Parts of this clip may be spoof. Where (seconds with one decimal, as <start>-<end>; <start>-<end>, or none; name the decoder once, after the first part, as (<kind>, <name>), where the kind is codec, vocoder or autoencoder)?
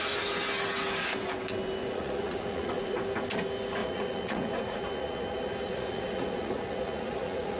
1.8-3.0 (vocoder, Vocos); 3.8-7.6